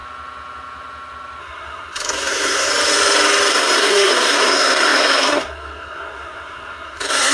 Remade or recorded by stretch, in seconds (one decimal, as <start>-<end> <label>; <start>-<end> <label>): 0.0-1.4 recorded; 1.4-2.7 remade; 2.7-3.5 recorded; 3.5-7.3 remade